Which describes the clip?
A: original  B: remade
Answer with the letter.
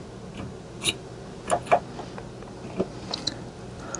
A